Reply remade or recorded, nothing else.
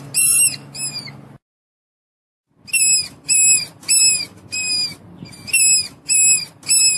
recorded